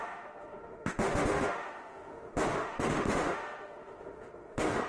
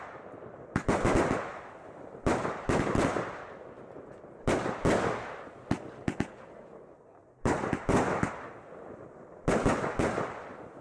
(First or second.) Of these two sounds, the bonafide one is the second